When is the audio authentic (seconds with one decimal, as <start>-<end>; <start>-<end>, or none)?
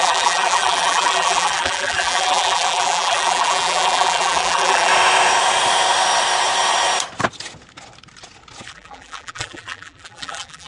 4.9-8.7